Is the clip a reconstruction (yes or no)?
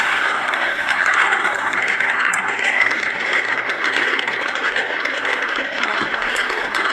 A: yes